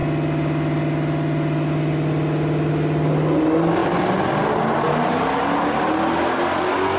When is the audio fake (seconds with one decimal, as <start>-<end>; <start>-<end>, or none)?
none